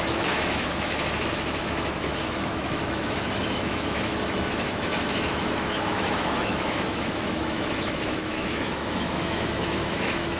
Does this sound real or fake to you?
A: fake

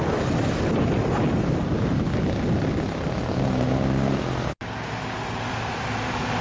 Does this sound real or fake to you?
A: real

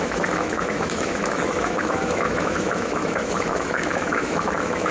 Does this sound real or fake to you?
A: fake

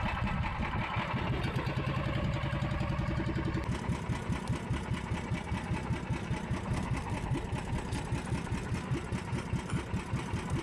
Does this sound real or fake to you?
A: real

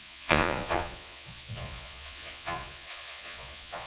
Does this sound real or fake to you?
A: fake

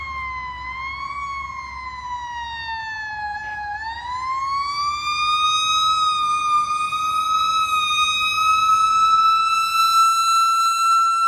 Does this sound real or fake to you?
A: real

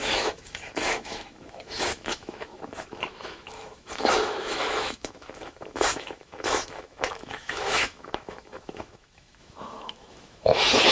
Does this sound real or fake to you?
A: fake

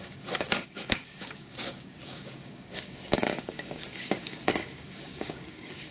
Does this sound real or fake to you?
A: fake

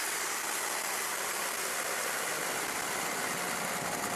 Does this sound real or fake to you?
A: fake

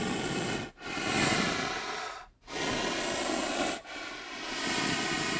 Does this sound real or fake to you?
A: real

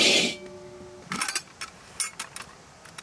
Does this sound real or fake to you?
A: real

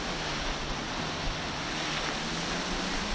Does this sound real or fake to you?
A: real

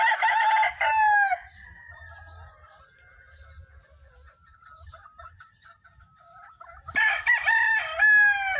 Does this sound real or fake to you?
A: real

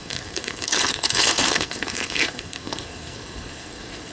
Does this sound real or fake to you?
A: fake